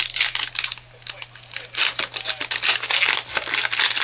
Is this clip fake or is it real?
real